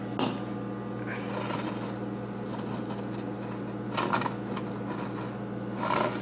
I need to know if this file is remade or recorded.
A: recorded